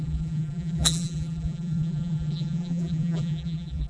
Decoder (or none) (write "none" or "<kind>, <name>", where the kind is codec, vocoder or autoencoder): vocoder, BigVGAN v2